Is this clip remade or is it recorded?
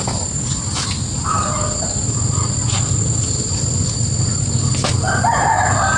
recorded